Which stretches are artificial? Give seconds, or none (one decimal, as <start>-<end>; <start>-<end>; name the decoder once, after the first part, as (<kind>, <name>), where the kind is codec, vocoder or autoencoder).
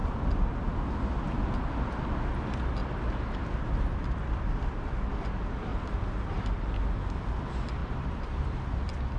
5.7-6.5 (vocoder, BigVGAN v2); 7.8-8.6